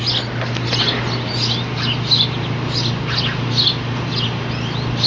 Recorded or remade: recorded